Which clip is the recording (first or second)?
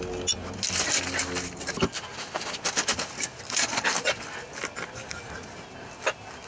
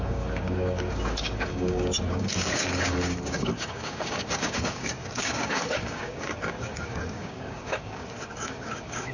first